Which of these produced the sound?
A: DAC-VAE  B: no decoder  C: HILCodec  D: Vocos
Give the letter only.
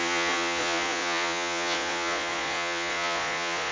D